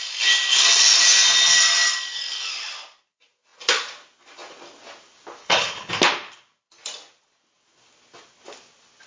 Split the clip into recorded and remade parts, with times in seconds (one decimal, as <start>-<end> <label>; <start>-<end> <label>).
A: 0.0-5.4 recorded; 5.4-5.9 remade; 5.9-9.1 recorded